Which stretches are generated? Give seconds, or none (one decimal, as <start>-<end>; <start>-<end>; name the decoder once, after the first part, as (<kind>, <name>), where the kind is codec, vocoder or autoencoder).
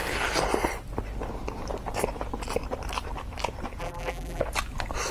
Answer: 3.8-4.4 (vocoder, BigVGAN v2)